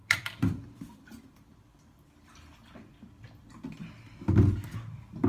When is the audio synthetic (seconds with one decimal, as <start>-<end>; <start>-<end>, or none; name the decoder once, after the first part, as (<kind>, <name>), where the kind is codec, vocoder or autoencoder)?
0.0-2.0 (vocoder, BigVGAN v2)